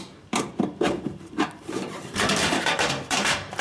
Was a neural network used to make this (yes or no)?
yes